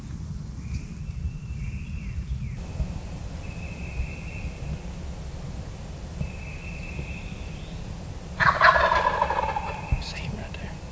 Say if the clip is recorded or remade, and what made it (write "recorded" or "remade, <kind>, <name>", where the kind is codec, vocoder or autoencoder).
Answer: recorded